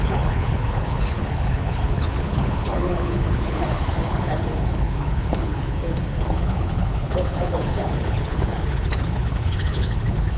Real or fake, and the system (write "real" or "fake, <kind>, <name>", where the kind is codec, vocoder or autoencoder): fake, codec, HILCodec